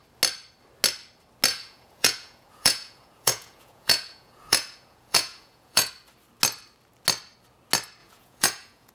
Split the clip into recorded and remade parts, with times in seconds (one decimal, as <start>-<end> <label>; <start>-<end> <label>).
0.0-1.5 recorded; 1.5-5.9 remade; 5.9-8.0 recorded; 8.0-8.9 remade